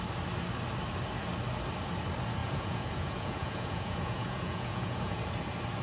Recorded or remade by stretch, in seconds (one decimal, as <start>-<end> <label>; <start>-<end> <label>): 0.0-2.4 recorded; 2.4-5.2 remade; 5.2-5.8 recorded